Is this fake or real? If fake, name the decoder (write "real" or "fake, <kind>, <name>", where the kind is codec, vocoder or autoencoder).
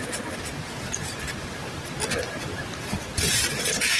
real